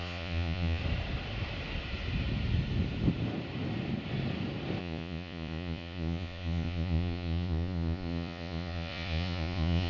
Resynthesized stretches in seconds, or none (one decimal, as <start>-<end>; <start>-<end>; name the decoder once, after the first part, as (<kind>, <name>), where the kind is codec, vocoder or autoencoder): 0.0-0.8 (vocoder, Vocos); 4.8-9.9